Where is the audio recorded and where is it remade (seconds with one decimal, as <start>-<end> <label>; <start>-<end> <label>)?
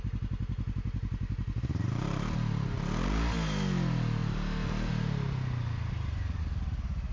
0.0-7.1 recorded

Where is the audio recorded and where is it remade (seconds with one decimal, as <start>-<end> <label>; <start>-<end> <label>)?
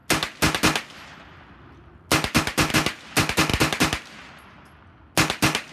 0.0-5.7 recorded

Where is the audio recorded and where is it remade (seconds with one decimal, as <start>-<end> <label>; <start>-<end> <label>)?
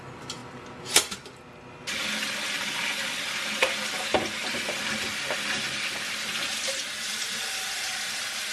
0.0-4.4 recorded; 4.4-5.2 remade; 5.2-8.5 recorded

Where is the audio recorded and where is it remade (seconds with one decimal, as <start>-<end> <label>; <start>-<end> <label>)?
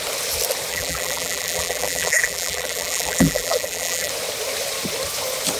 0.0-0.7 recorded; 0.7-4.1 remade; 4.1-5.6 recorded